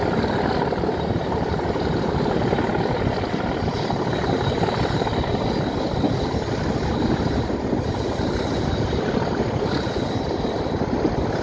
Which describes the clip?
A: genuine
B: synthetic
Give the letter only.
A